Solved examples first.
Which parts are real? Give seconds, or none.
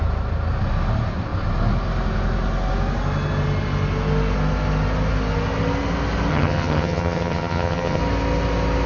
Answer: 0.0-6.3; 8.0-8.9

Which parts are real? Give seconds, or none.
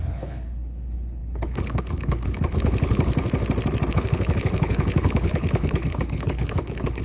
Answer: 3.1-3.9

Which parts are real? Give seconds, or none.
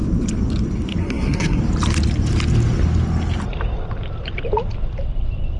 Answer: 0.0-1.0; 1.6-5.6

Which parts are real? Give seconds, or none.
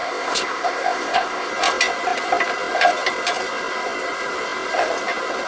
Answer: 1.5-5.5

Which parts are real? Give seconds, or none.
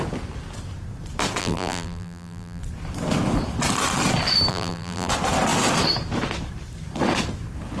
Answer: 0.0-1.4; 2.6-4.5; 5.1-7.8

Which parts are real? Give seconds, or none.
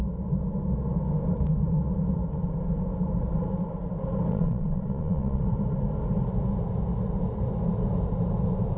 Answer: 0.0-4.3; 5.4-8.8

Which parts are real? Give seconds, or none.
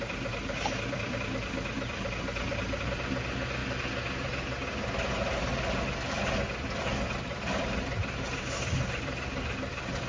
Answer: 3.6-6.8; 8.0-8.8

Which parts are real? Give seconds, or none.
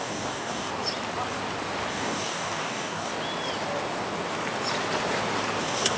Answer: 0.7-1.9; 3.1-5.6